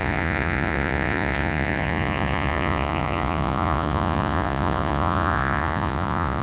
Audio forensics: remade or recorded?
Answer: remade